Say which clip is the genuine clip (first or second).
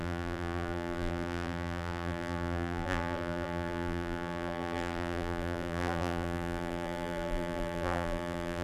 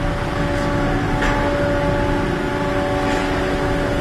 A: second